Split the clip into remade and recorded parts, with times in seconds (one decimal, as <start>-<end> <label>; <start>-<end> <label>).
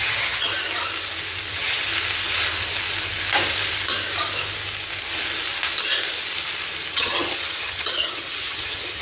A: 0.0-0.5 remade; 0.5-1.5 recorded; 1.5-1.9 remade; 1.9-6.9 recorded; 6.9-9.0 remade